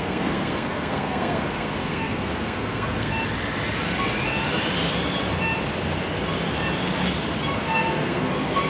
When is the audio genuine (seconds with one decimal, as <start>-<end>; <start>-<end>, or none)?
3.1-7.6